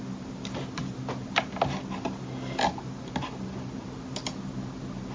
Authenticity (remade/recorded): recorded